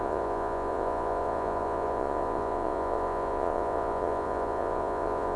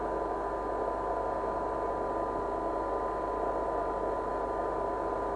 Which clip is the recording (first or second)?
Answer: second